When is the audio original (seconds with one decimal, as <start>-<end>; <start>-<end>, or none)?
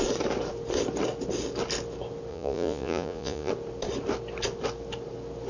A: 0.0-2.3; 3.5-5.5